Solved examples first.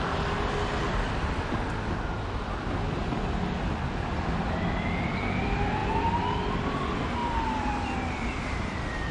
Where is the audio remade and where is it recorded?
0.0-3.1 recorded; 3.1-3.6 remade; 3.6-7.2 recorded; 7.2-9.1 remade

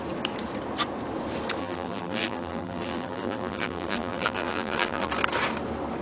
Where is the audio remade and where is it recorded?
0.0-1.6 recorded; 1.6-5.1 remade; 5.1-6.0 recorded

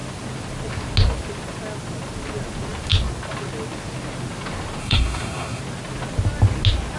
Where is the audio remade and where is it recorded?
0.0-4.8 recorded; 4.8-5.6 remade; 5.6-7.0 recorded

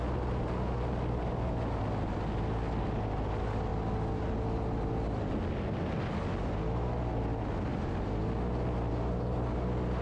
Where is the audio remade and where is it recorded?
0.0-10.0 recorded

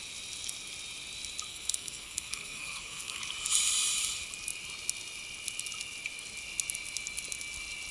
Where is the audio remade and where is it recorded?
0.0-1.5 recorded; 1.5-3.2 remade; 3.2-7.9 recorded

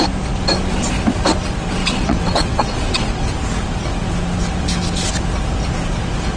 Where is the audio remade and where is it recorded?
0.0-1.8 recorded; 1.8-3.3 remade; 3.3-6.4 recorded

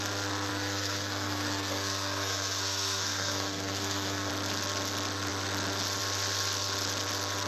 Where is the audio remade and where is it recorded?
0.0-0.5 recorded; 0.5-4.3 remade; 4.3-7.5 recorded